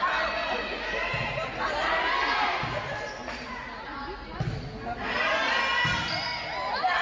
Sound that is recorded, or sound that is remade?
recorded